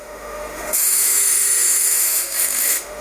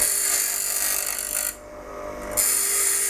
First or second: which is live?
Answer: second